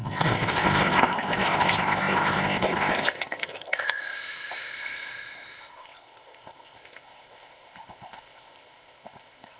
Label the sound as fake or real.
fake